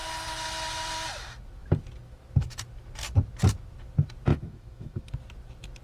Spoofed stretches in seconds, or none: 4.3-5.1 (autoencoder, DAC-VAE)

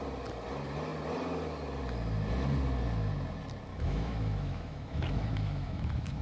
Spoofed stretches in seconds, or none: 3.7-6.2 (autoencoder, DAC-VAE)

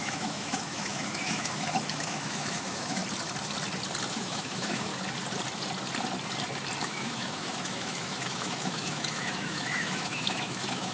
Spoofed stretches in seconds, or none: 0.0-3.0 (autoencoder, DAC-VAE); 4.1-4.9; 6.8-10.9

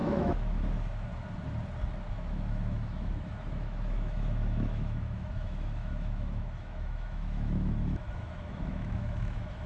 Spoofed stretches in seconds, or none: 0.0-1.1 (autoencoder, DAC-VAE); 2.1-9.7